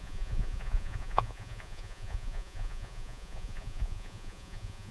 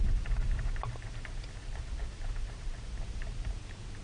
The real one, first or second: second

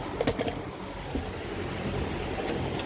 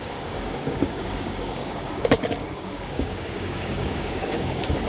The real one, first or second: first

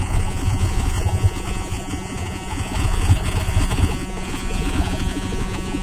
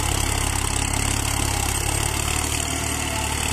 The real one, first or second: second